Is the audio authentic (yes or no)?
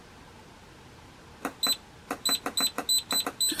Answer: yes